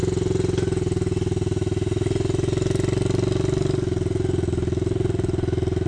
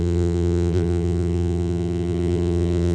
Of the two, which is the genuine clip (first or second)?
first